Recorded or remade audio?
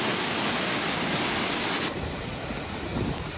recorded